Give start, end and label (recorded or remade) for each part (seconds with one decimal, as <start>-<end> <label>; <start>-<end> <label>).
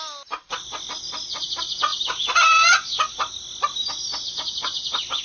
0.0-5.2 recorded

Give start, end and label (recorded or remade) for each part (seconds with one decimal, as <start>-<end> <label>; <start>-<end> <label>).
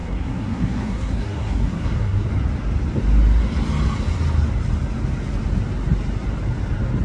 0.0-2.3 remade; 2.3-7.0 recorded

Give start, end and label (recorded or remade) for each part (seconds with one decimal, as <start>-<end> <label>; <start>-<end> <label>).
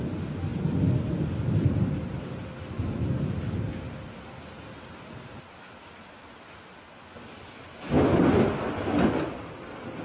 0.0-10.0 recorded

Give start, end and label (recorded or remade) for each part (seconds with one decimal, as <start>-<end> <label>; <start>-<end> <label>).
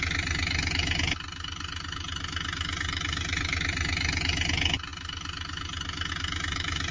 0.0-6.9 recorded